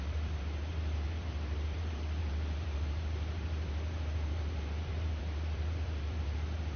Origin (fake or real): fake